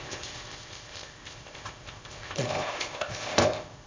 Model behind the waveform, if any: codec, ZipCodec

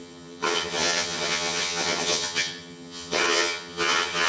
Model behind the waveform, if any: vocoder, HiFi-GAN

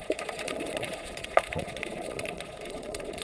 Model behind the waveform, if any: vocoder, Vocos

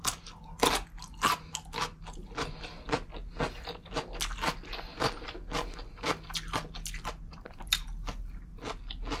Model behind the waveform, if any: none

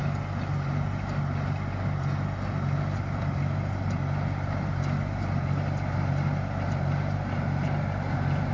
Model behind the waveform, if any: none